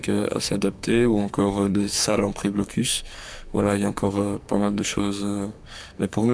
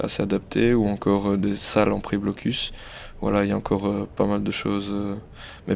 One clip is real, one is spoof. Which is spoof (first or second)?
first